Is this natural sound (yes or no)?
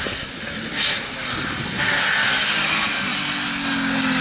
yes